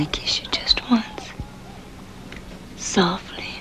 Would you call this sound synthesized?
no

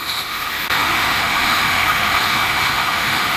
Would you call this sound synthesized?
yes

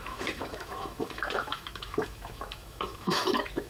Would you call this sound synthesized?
yes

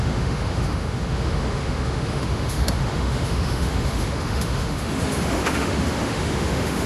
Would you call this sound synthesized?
yes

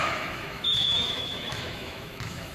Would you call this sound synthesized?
yes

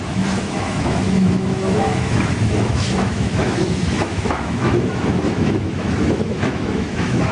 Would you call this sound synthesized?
yes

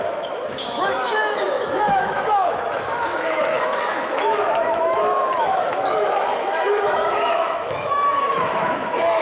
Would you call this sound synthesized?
yes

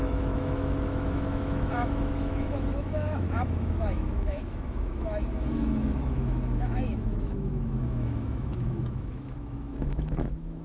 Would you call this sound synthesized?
yes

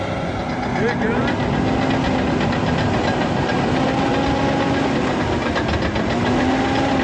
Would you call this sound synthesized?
no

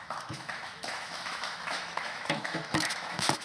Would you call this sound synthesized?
yes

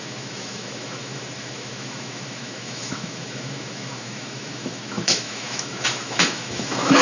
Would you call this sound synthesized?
yes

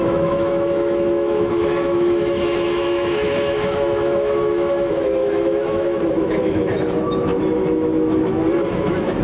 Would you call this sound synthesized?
yes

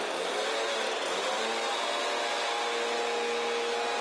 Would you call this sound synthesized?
no